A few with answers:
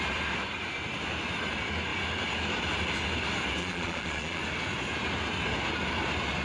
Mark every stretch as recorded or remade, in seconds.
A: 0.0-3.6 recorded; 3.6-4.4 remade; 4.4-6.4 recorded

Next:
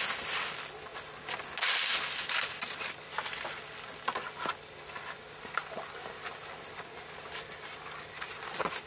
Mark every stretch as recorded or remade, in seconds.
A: 0.0-8.9 recorded

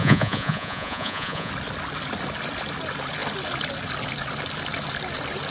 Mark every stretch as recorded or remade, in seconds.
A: 0.0-1.5 remade; 1.5-5.5 recorded

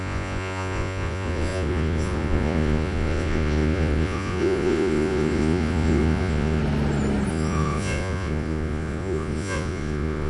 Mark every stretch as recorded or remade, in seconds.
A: 0.0-6.6 remade; 6.6-7.3 recorded; 7.3-10.3 remade

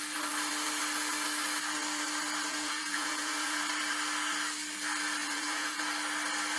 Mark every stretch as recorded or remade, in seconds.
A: 0.0-2.5 recorded; 2.5-3.6 remade; 3.6-5.2 recorded; 5.2-5.8 remade; 5.8-6.6 recorded

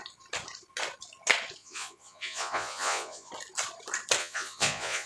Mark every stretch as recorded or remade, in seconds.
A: 0.0-1.6 recorded; 1.6-3.3 remade; 3.3-4.2 recorded; 4.2-5.1 remade